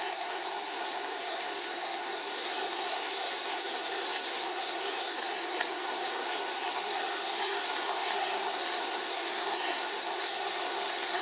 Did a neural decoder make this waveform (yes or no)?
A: yes